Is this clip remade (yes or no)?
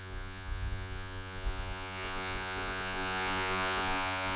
yes